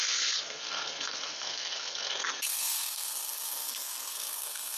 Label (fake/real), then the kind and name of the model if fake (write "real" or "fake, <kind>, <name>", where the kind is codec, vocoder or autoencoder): fake, codec, SNAC